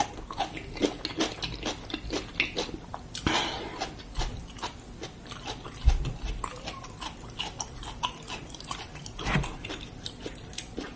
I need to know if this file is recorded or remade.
recorded